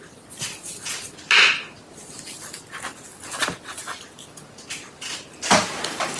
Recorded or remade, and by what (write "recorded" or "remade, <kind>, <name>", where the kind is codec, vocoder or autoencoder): recorded